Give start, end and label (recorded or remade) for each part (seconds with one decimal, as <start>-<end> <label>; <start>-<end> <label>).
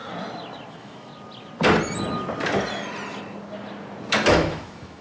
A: 0.0-0.7 recorded; 0.7-1.1 remade; 1.1-4.1 recorded; 4.1-5.0 remade